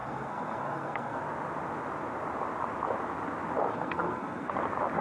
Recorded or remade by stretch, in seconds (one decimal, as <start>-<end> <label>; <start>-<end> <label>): 0.0-1.2 remade; 1.2-3.7 recorded; 3.7-4.5 remade; 4.5-5.0 recorded